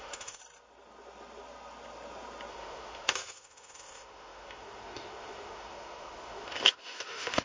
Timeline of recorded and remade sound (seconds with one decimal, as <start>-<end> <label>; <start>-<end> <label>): 0.0-0.4 remade; 0.4-2.5 recorded; 2.5-7.4 remade